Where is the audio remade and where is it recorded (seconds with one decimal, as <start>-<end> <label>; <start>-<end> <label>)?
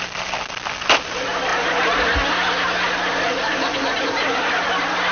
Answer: 0.0-5.1 recorded